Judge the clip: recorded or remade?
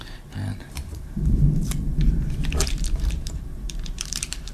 remade